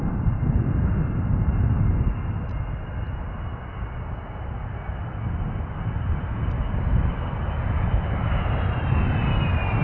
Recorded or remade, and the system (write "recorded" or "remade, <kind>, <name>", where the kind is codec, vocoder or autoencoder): recorded